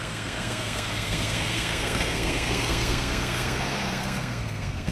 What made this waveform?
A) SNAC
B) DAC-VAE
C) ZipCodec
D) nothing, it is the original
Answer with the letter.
A